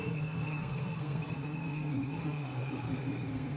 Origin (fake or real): fake